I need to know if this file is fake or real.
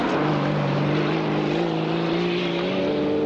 real